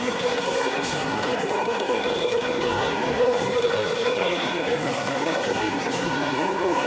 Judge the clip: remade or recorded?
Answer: remade